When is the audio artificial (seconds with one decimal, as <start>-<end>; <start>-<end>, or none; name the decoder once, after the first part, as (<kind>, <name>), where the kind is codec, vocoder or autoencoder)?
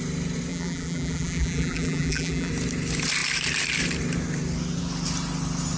0.5-2.5 (vocoder, BigVGAN v2)